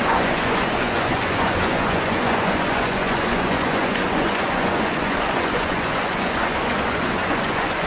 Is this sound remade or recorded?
remade